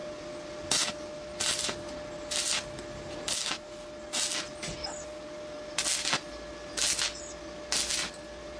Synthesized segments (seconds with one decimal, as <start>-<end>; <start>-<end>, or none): none